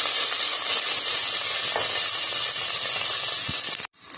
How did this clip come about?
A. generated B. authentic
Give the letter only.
B